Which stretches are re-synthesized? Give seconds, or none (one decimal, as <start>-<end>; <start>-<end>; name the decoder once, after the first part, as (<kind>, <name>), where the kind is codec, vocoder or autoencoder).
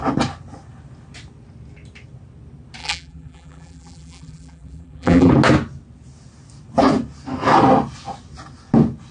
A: 2.8-5.3 (vocoder, BigVGAN v2)